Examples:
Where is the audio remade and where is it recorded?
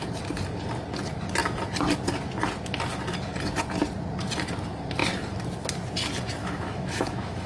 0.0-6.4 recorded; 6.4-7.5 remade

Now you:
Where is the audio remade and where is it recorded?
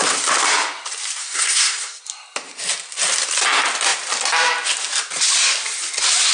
0.0-1.2 recorded; 1.2-2.0 remade; 2.0-6.3 recorded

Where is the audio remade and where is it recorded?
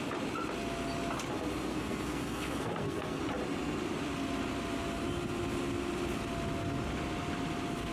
0.0-1.7 recorded; 1.7-3.2 remade; 3.2-7.9 recorded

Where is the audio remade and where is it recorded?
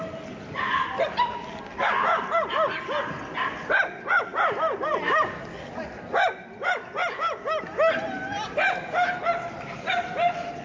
0.0-10.6 recorded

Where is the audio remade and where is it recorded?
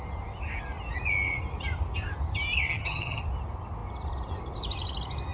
0.0-2.7 recorded; 2.7-3.2 remade; 3.2-5.3 recorded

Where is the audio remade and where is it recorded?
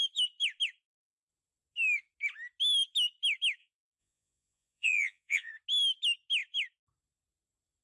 0.0-3.6 recorded; 3.6-5.5 remade; 5.5-7.8 recorded